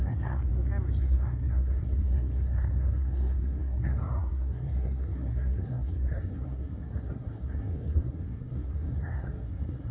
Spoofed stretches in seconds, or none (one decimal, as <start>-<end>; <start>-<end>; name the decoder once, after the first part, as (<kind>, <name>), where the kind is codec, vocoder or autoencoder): 0.0-0.5 (codec, SNAC); 1.0-9.9